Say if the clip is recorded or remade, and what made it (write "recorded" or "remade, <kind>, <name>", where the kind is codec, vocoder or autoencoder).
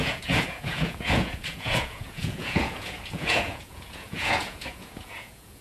remade, vocoder, Vocos